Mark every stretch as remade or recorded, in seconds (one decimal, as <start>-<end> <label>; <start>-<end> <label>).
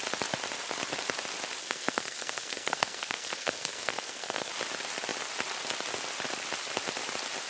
0.0-1.6 recorded; 1.6-4.5 remade; 4.5-7.5 recorded